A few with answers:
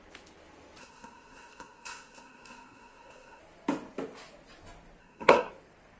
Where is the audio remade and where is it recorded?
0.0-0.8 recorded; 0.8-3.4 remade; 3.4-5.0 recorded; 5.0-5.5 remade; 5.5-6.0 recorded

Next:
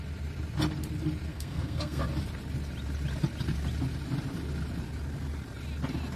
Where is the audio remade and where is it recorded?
0.0-1.3 recorded; 1.3-2.0 remade; 2.0-6.2 recorded

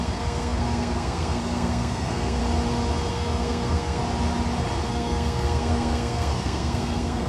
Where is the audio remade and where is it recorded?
0.0-2.4 remade; 2.4-3.1 recorded; 3.1-4.0 remade; 4.0-4.9 recorded; 4.9-7.3 remade

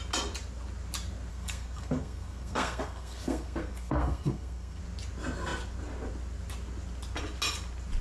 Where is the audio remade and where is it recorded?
0.0-1.3 recorded; 1.3-4.8 remade; 4.8-8.0 recorded

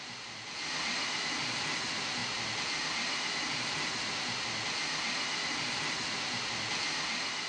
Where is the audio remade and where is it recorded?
0.0-7.5 recorded

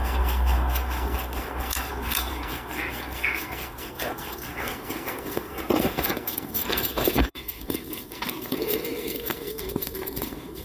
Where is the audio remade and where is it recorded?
0.0-10.6 remade

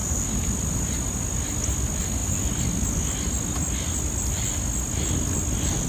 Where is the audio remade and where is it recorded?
0.0-5.9 recorded

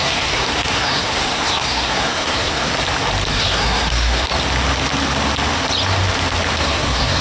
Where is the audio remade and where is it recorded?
0.0-2.7 remade; 2.7-3.3 recorded; 3.3-4.3 remade; 4.3-6.6 recorded; 6.6-7.2 remade